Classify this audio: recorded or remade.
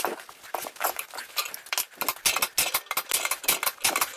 recorded